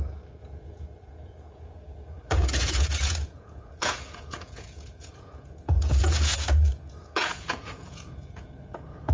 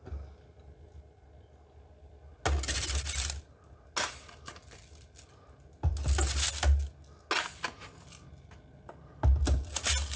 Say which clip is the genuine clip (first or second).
second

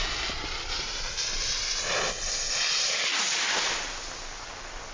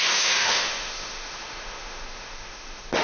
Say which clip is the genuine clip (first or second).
first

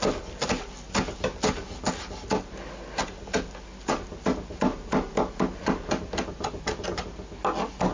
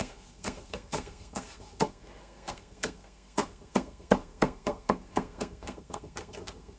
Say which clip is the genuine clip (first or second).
first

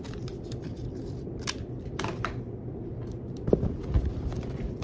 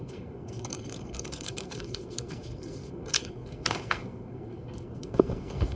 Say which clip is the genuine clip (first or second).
first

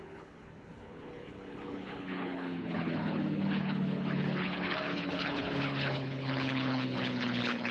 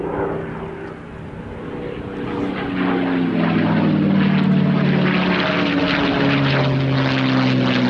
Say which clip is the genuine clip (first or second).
second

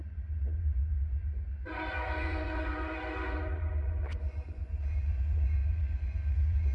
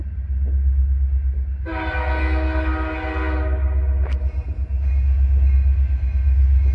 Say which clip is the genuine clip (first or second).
second